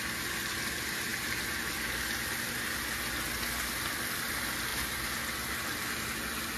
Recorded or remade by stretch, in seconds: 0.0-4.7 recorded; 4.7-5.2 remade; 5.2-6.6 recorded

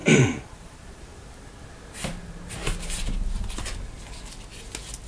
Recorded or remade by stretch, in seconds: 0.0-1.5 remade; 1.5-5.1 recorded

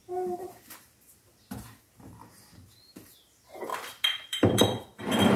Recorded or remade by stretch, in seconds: 0.0-3.7 recorded; 3.7-5.4 remade